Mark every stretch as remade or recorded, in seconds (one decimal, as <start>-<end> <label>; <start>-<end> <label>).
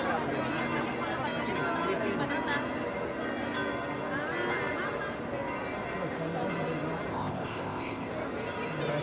0.0-7.1 recorded; 7.1-8.1 remade; 8.1-9.0 recorded